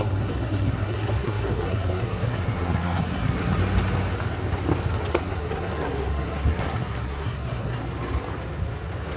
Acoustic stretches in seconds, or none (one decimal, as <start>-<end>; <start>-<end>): 3.6-5.1; 7.8-9.2